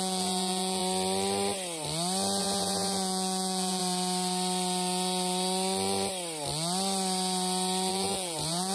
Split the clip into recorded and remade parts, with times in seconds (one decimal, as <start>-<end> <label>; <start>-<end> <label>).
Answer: 0.0-0.8 remade; 0.8-2.4 recorded; 2.4-3.8 remade; 3.8-7.9 recorded; 7.9-8.7 remade